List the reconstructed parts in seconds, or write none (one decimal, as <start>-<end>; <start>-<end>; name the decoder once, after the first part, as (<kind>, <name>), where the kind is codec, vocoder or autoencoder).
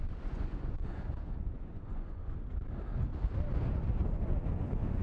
0.0-2.2 (vocoder, Vocos); 3.8-5.0